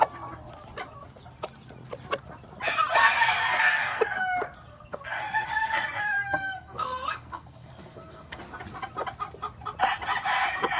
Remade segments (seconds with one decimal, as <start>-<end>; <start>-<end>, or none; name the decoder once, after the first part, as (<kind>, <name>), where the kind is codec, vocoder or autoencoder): 3.0-4.0 (codec, SNAC); 4.7-8.4